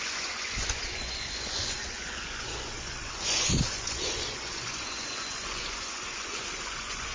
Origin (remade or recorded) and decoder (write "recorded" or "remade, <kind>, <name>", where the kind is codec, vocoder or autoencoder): remade, vocoder, Vocos